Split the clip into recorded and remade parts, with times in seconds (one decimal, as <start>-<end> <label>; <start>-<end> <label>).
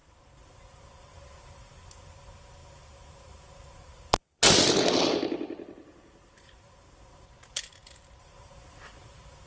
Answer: 0.0-2.6 recorded; 2.6-3.7 remade; 3.7-9.5 recorded